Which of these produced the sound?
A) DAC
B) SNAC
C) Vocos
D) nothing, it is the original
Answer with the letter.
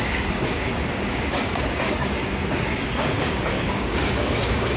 A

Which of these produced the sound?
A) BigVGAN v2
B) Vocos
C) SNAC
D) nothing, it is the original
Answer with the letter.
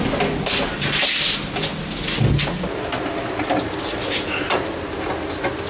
D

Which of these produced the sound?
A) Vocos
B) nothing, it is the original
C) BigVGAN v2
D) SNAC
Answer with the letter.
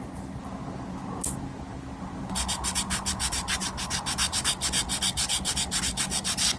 B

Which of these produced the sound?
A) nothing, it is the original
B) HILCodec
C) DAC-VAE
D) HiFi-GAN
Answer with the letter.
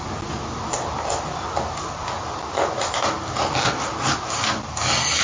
A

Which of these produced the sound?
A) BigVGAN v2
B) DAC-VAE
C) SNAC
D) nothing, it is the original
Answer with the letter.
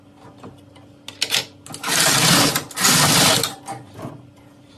D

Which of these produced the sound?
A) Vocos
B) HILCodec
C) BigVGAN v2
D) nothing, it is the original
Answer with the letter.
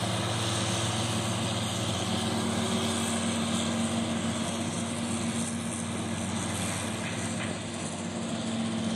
D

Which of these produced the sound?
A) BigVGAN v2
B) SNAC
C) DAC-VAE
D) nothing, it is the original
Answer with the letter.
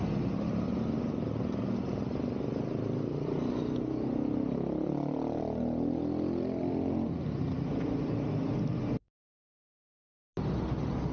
D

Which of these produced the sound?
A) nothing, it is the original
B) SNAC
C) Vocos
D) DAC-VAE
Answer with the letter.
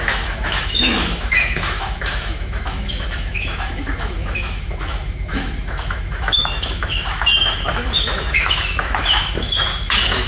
D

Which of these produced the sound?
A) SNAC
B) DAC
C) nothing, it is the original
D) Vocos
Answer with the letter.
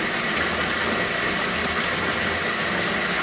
C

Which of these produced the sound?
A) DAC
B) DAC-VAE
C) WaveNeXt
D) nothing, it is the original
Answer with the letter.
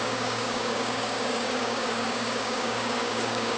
A